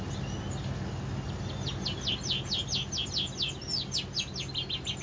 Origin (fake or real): real